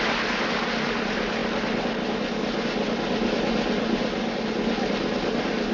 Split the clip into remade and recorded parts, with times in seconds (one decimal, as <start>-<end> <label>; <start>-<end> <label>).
0.0-5.7 recorded

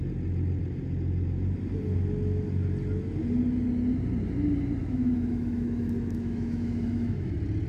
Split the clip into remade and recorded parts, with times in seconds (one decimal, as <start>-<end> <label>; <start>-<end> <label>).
0.0-4.8 recorded; 4.8-7.3 remade; 7.3-7.7 recorded

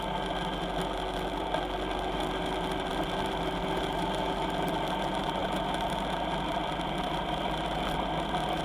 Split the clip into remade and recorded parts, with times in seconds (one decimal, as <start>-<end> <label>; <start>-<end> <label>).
0.0-8.6 recorded

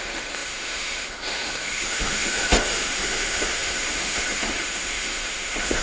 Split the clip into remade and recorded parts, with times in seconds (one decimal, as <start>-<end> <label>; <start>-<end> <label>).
0.0-5.8 remade

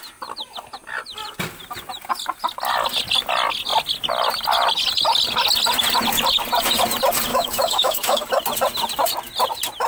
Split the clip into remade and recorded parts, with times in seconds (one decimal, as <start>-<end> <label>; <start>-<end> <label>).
0.0-7.3 recorded; 7.3-8.3 remade; 8.3-9.9 recorded